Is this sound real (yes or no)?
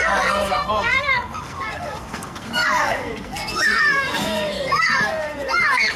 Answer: no